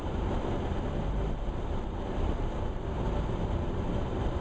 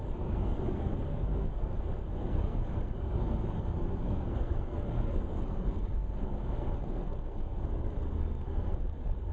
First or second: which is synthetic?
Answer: second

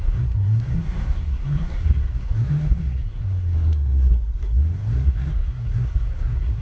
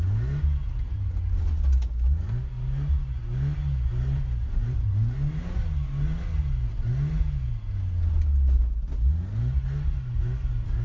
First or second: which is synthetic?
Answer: first